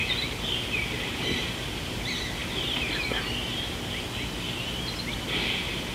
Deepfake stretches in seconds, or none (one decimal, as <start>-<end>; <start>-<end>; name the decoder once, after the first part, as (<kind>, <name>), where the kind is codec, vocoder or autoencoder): 1.1-2.4 (vocoder, BigVGAN v2)